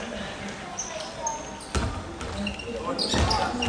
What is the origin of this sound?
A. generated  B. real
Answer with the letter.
B